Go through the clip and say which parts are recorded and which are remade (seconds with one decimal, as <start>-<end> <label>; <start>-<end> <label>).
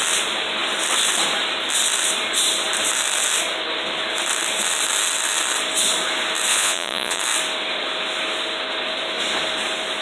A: 0.0-6.5 recorded; 6.5-7.2 remade; 7.2-10.0 recorded